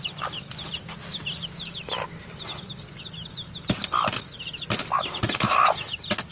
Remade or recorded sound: recorded